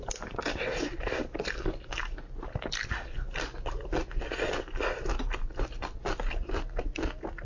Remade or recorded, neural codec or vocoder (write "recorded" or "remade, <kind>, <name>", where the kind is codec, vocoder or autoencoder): recorded